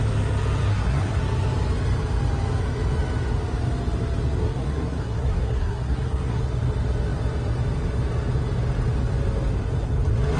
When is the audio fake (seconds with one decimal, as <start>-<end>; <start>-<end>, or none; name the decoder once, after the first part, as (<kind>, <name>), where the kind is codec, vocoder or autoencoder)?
0.7-1.2 (codec, SNAC); 4.4-6.4